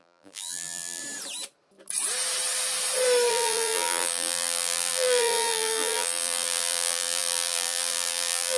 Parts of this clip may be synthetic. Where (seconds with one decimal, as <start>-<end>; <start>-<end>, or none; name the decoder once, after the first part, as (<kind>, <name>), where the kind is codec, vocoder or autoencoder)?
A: 0.0-1.0 (vocoder, BigVGAN v2); 3.3-8.6